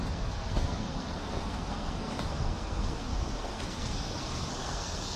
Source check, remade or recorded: remade